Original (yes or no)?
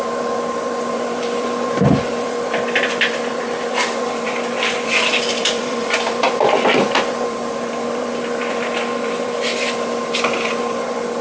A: no